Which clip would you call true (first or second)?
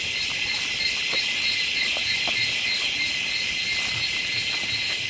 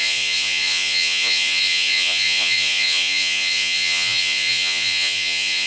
first